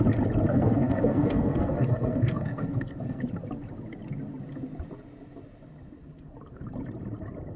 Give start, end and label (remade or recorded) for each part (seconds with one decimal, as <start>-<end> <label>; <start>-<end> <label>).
0.0-0.5 recorded; 0.5-3.2 remade; 3.2-7.6 recorded